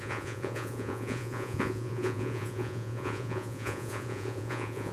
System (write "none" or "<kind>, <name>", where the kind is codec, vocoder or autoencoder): vocoder, Vocos